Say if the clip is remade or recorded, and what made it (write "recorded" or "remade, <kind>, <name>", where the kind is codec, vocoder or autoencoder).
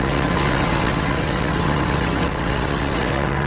remade, vocoder, WaveNeXt